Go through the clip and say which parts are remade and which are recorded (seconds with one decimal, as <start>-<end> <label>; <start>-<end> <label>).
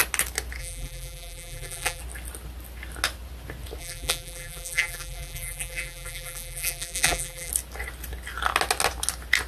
0.0-0.6 recorded; 0.6-2.0 remade; 2.0-3.8 recorded; 3.8-7.5 remade; 7.5-9.5 recorded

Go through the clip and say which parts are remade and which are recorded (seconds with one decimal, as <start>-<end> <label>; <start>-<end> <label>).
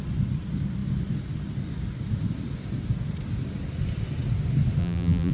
0.0-4.8 recorded; 4.8-5.3 remade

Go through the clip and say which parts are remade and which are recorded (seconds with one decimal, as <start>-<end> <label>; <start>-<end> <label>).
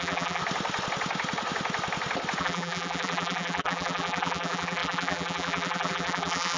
0.0-0.4 remade; 0.4-2.4 recorded; 2.4-6.6 remade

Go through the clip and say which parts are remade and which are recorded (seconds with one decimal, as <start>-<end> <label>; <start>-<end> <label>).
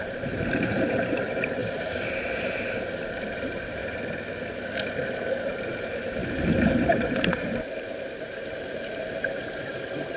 0.0-3.8 remade; 3.8-5.4 recorded; 5.4-10.2 remade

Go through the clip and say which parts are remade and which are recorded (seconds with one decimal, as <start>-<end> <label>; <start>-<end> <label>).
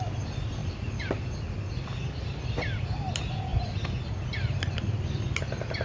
0.0-0.6 recorded; 0.6-1.3 remade; 1.3-5.8 recorded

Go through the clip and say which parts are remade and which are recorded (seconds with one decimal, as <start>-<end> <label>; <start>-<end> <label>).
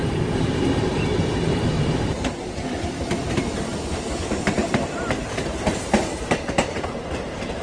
0.0-3.7 remade; 3.7-5.1 recorded; 5.1-7.6 remade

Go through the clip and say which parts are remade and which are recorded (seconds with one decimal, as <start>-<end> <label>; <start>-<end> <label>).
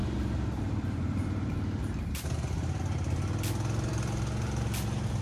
0.0-2.8 remade; 2.8-5.2 recorded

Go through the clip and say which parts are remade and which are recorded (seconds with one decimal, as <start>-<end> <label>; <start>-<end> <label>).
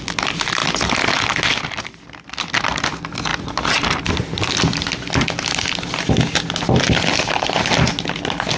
0.0-3.3 recorded; 3.3-4.8 remade; 4.8-8.6 recorded